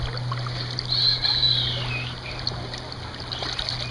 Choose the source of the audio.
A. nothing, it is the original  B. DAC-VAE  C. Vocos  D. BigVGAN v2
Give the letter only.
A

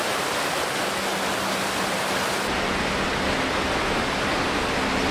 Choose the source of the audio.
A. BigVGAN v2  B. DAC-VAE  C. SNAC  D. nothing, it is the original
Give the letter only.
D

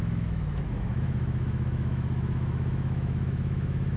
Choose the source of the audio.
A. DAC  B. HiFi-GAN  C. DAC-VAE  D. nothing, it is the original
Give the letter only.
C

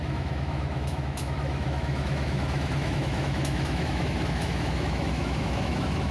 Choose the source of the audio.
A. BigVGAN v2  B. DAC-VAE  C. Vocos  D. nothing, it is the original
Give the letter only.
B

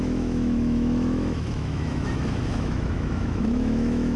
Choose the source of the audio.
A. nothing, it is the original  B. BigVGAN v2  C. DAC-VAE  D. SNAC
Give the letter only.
C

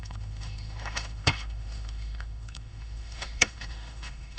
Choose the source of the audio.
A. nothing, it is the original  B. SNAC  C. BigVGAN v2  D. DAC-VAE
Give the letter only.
D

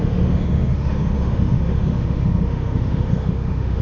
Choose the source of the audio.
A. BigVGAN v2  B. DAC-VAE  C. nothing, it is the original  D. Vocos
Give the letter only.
B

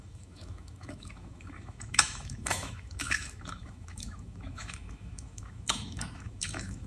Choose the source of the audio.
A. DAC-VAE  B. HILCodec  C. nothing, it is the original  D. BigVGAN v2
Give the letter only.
A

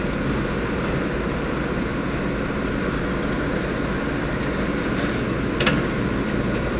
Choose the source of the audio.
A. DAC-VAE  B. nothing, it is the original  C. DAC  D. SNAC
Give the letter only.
B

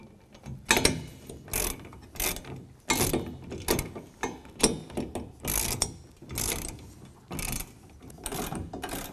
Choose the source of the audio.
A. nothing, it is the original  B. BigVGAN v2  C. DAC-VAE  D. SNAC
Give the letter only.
A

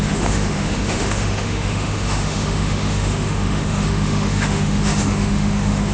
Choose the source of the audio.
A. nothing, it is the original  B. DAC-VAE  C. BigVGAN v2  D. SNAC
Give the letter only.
B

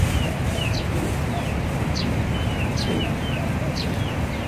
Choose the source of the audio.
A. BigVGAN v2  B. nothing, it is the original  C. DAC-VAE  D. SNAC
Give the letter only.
B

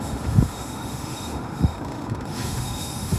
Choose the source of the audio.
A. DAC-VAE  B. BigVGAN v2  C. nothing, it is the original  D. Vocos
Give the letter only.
A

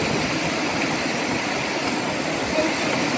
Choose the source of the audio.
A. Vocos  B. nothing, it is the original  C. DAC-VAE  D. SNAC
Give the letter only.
B